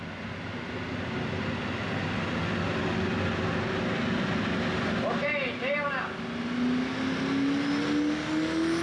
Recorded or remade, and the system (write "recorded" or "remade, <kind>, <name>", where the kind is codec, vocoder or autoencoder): recorded